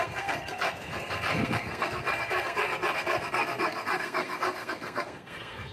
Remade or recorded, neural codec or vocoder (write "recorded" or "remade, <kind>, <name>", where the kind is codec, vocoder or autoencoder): remade, codec, SNAC